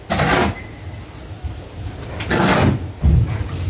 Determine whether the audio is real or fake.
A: real